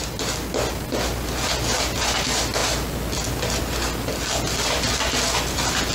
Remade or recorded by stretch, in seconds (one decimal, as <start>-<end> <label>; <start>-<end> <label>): 0.0-5.9 recorded